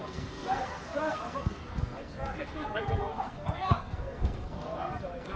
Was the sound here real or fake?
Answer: fake